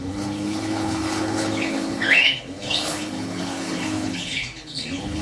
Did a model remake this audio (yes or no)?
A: yes